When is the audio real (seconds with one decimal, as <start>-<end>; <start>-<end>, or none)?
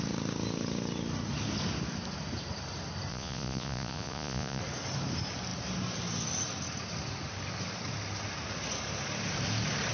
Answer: 0.0-3.1; 4.6-9.9